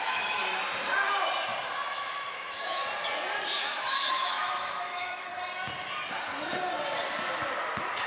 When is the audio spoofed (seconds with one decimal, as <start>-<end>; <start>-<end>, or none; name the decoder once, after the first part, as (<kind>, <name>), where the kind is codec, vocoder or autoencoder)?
0.0-0.4 (autoencoder, DAC-VAE); 1.9-2.8; 3.7-5.3